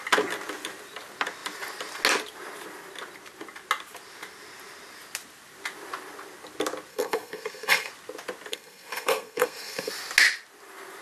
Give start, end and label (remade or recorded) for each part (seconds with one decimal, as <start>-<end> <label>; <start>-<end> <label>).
0.0-6.9 recorded; 6.9-7.9 remade; 7.9-8.5 recorded; 8.5-9.9 remade; 9.9-11.0 recorded